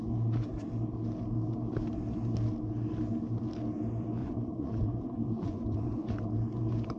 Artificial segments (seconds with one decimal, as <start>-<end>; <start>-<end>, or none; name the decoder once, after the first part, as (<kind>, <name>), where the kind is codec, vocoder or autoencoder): 4.2-6.1 (vocoder, Vocos)